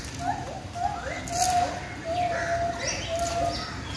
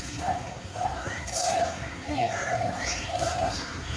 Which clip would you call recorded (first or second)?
first